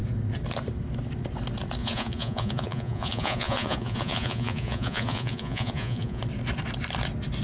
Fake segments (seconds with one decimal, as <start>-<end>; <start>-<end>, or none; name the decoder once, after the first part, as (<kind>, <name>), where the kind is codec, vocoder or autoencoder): 1.8-6.2 (vocoder, Vocos)